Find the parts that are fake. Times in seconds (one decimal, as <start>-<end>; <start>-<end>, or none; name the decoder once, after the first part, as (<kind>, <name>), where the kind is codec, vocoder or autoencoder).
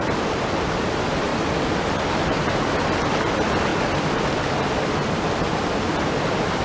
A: none